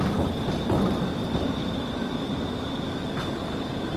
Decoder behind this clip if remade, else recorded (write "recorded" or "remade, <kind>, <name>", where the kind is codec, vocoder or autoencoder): recorded